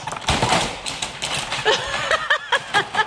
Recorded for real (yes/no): yes